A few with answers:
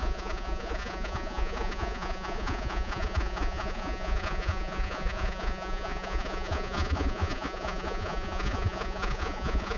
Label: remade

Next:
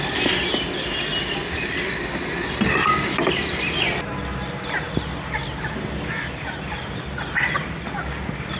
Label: recorded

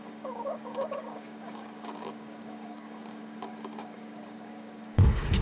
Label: remade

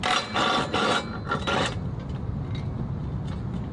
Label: recorded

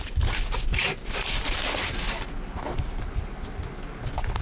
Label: recorded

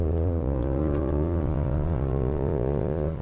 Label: remade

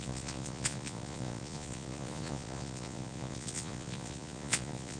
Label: remade